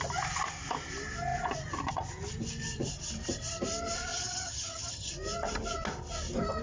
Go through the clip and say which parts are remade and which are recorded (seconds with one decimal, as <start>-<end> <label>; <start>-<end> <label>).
0.0-4.1 recorded; 4.1-5.1 remade; 5.1-6.6 recorded